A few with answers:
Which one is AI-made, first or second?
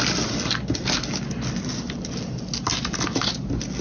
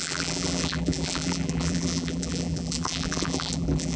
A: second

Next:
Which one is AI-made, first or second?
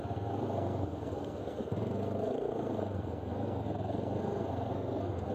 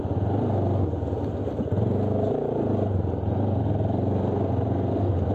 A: first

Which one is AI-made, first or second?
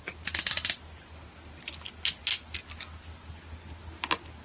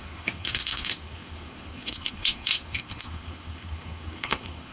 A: second